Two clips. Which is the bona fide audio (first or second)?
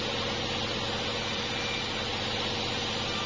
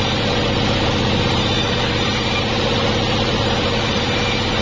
first